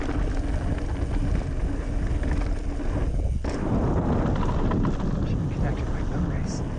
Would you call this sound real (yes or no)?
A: yes